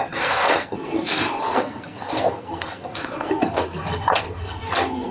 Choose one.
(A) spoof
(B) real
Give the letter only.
A